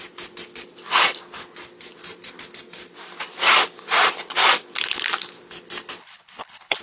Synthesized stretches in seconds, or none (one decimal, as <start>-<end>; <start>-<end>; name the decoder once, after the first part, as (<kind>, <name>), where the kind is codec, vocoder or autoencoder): 6.0-6.8 (codec, HILCodec)